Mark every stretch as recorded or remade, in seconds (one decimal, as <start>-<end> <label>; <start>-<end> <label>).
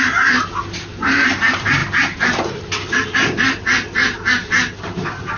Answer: 0.0-0.9 recorded; 0.9-1.4 remade; 1.4-5.4 recorded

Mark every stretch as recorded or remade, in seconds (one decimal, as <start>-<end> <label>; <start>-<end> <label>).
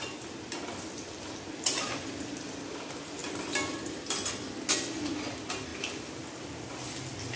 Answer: 0.0-3.2 recorded; 3.2-4.3 remade; 4.3-7.4 recorded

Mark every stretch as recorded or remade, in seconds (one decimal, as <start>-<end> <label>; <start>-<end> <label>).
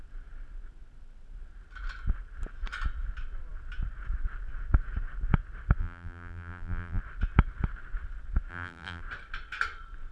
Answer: 0.0-5.8 recorded; 5.8-7.0 remade; 7.0-8.5 recorded; 8.5-9.0 remade; 9.0-10.1 recorded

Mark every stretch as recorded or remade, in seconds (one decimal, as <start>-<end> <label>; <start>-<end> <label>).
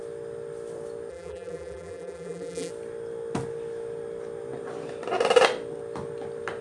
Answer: 0.0-1.1 recorded; 1.1-2.7 remade; 2.7-6.6 recorded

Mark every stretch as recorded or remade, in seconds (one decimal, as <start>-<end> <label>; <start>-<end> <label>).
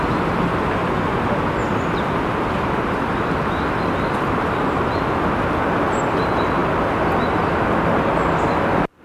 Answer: 0.0-9.0 recorded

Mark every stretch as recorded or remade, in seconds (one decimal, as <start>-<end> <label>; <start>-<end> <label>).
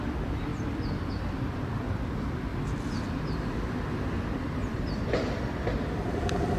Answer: 0.0-0.5 remade; 0.5-1.1 recorded; 1.1-2.5 remade; 2.5-4.0 recorded; 4.0-6.6 remade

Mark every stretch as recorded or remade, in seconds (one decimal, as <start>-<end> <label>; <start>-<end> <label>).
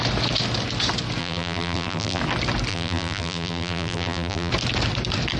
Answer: 0.0-1.2 recorded; 1.2-2.2 remade; 2.2-2.7 recorded; 2.7-4.5 remade; 4.5-5.4 recorded